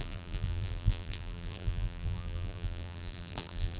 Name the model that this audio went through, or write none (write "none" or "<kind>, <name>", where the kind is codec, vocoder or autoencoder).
vocoder, BigVGAN v2